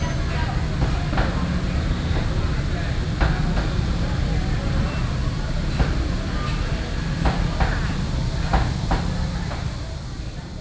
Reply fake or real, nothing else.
real